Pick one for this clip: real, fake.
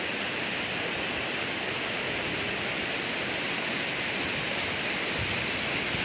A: real